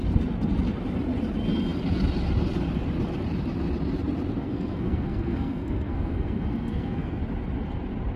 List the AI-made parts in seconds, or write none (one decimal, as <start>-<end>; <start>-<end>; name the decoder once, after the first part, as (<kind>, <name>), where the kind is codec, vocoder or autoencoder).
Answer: 4.4-7.2 (codec, SNAC)